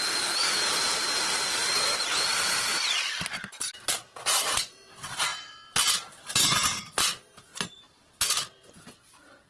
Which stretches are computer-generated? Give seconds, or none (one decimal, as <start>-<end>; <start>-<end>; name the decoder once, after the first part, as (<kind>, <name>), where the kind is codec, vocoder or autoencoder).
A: 1.6-4.5 (vocoder, BigVGAN v2); 7.5-8.1